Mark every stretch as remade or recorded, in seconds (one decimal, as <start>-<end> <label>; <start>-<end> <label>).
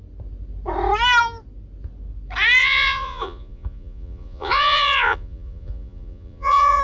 0.0-2.6 recorded; 2.6-6.8 remade